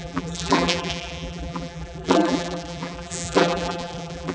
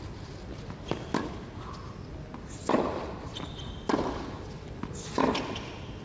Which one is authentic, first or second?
second